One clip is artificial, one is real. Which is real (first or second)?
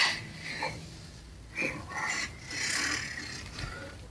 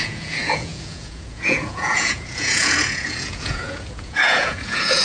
first